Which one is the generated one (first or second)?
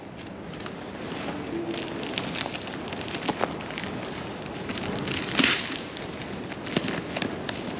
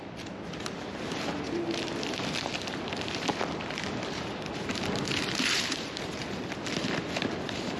second